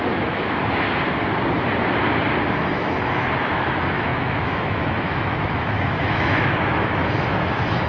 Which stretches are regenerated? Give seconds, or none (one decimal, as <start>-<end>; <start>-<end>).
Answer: 0.0-0.6; 2.6-7.9